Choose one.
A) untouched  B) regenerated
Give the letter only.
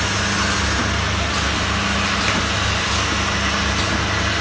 A